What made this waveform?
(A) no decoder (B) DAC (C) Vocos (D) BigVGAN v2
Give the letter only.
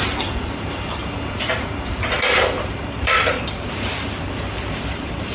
D